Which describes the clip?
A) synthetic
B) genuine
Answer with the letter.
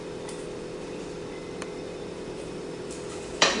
A